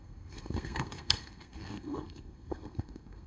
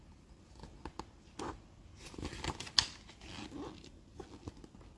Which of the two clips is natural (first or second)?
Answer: second